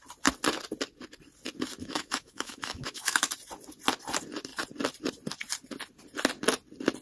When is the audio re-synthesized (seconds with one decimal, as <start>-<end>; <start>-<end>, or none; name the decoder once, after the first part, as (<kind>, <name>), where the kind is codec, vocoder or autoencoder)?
1.8-3.3 (autoencoder, DAC-VAE)